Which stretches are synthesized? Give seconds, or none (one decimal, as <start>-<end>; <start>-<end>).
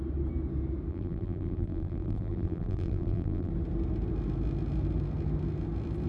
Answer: 0.9-3.5